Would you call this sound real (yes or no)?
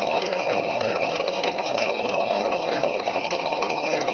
no